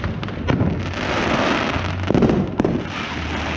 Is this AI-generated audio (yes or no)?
no